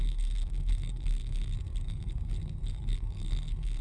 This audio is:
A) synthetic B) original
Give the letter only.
A